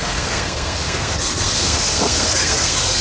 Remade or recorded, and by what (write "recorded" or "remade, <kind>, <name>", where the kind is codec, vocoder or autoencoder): remade, codec, SNAC